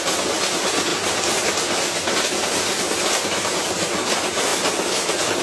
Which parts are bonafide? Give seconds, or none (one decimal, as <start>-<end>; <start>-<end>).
0.0-0.9; 4.1-4.5